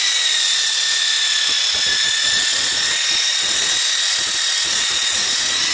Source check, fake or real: fake